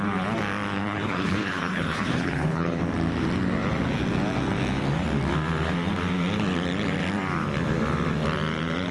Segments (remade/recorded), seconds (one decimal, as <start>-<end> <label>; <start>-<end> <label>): 0.0-0.8 recorded; 0.8-2.8 remade; 2.8-8.9 recorded